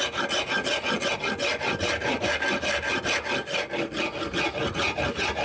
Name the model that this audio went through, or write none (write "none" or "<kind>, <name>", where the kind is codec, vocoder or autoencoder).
none